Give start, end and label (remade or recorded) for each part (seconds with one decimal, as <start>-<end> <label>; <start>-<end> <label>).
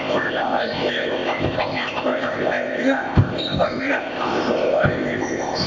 0.0-5.7 remade